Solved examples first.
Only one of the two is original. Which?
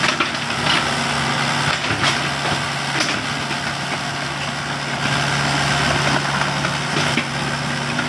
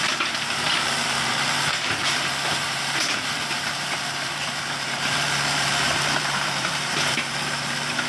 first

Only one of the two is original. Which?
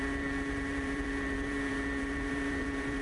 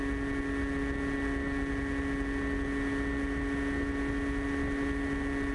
second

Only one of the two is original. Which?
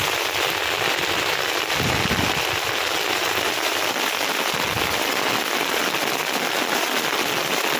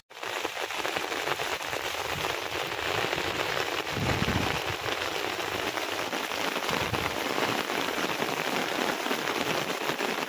first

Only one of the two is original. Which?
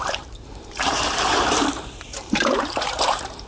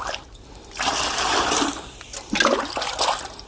second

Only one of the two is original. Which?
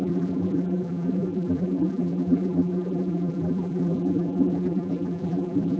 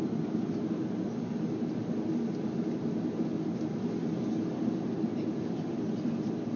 second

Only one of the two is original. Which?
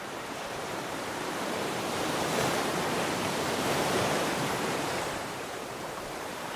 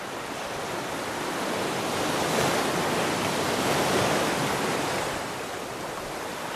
second